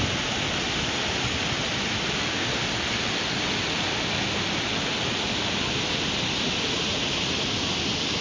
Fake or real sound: real